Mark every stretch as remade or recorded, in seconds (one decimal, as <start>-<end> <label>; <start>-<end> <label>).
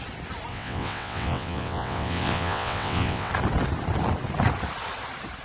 0.0-0.5 recorded; 0.5-3.3 remade; 3.3-5.4 recorded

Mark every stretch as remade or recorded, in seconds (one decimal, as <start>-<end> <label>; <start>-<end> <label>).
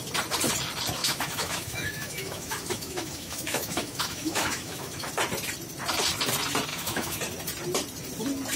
0.0-1.0 recorded; 1.0-5.1 remade; 5.1-6.7 recorded; 6.7-7.2 remade; 7.2-8.6 recorded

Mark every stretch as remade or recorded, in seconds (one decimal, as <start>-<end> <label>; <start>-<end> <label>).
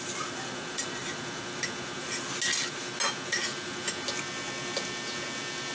0.0-5.7 recorded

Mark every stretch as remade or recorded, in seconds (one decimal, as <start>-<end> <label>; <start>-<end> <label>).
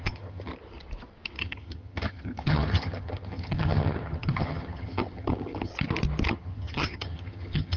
0.0-0.5 remade; 0.5-1.4 recorded; 1.4-5.7 remade; 5.7-6.3 recorded; 6.3-7.8 remade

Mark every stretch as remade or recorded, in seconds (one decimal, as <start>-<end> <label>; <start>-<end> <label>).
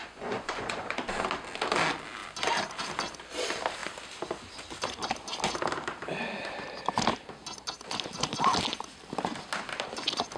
0.0-1.0 remade; 1.0-10.4 recorded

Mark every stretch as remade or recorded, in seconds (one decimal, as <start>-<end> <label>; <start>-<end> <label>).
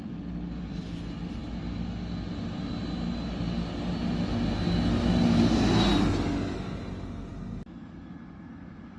0.0-9.0 recorded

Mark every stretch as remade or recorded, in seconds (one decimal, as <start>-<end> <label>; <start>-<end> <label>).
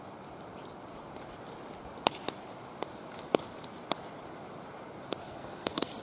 0.0-5.2 recorded; 5.2-6.0 remade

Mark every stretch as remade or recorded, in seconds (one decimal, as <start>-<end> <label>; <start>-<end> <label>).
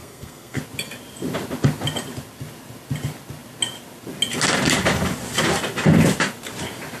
0.0-0.6 remade; 0.6-7.0 recorded